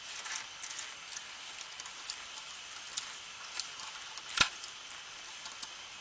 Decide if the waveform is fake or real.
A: real